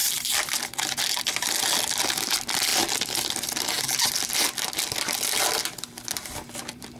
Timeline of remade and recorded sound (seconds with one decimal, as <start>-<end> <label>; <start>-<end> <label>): 0.0-0.5 remade; 0.5-2.7 recorded; 2.7-4.4 remade; 4.4-7.0 recorded